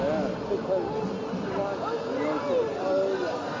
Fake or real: real